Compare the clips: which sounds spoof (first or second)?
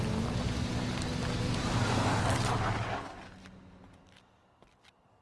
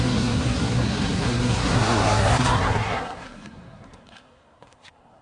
second